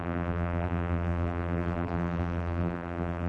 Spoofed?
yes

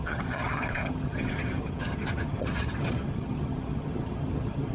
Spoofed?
yes